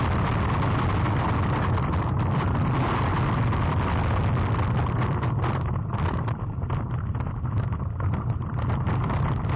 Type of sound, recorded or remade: recorded